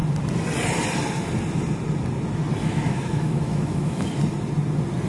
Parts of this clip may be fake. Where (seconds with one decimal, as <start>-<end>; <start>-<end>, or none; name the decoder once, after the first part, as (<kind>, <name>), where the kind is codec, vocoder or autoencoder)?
2.6-4.2 (autoencoder, DAC-VAE)